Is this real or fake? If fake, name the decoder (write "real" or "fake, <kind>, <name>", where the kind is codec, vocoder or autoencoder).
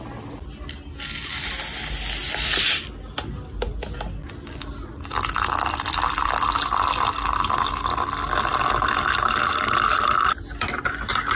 real